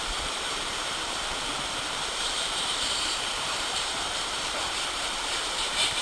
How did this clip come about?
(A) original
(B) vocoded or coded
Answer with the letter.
B